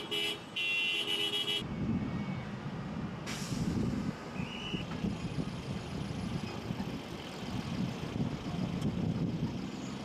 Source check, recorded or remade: recorded